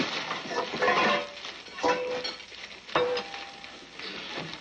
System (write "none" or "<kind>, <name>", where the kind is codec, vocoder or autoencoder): none